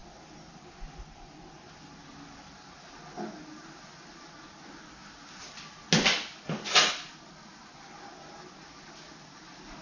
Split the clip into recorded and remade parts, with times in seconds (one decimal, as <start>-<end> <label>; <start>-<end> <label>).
0.0-9.8 recorded